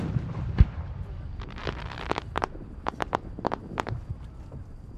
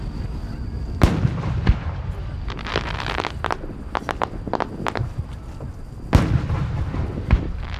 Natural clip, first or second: second